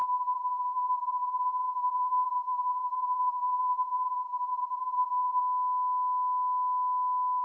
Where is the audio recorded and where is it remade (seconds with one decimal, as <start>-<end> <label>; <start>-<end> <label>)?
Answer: 0.0-5.4 remade; 5.4-7.4 recorded